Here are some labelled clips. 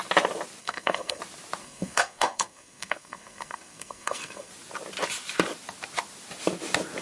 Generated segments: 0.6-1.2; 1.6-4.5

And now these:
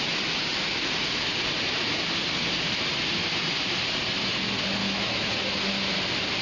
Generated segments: 4.8-5.3